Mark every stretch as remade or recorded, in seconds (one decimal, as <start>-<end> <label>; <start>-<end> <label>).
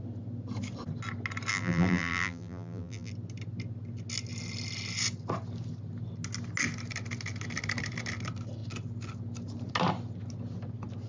0.0-1.5 recorded; 1.5-3.1 remade; 3.1-11.1 recorded